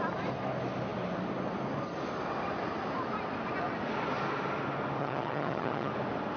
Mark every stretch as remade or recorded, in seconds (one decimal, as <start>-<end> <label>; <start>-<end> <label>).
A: 0.0-5.0 recorded; 5.0-5.9 remade; 5.9-6.4 recorded